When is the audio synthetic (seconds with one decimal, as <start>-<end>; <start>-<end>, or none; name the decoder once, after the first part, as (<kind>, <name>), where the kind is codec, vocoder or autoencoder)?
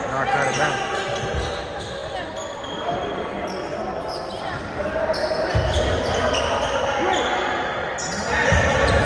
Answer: none